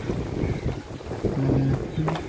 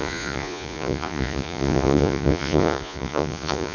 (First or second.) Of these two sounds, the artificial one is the second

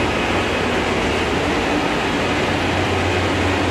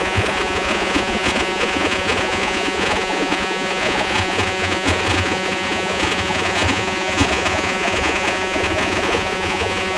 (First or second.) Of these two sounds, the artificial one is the second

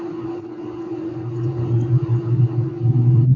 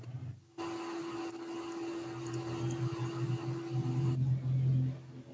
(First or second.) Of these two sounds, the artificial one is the first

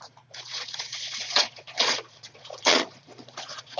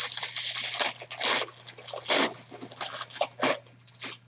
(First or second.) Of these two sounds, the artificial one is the first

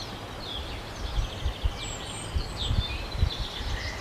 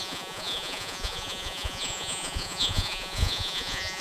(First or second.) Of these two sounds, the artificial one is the second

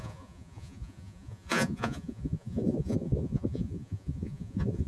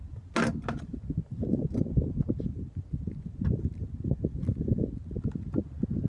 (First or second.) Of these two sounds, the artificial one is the first